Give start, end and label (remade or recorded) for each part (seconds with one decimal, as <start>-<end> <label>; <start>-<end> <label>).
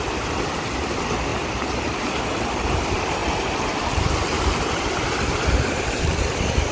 0.0-1.3 remade; 1.3-2.0 recorded; 2.0-3.2 remade; 3.2-4.7 recorded; 4.7-6.7 remade